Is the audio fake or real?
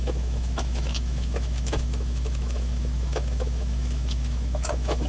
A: fake